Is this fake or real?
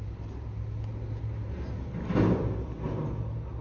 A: real